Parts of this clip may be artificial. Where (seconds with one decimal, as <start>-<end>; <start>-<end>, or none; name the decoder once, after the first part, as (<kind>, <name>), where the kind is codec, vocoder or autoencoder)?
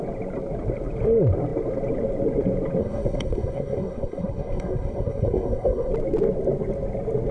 2.8-5.9 (codec, SNAC)